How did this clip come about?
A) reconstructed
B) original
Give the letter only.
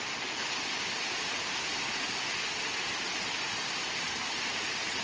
B